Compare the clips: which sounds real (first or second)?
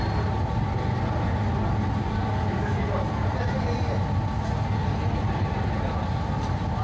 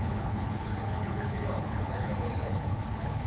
first